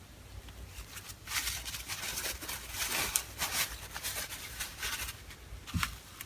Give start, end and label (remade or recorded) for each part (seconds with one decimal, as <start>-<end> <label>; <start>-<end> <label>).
0.0-1.4 recorded; 1.4-4.8 remade; 4.8-6.3 recorded